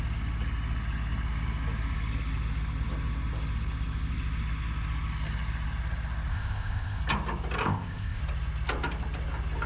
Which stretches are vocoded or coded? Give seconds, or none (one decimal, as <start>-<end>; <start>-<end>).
6.3-7.0; 7.6-8.2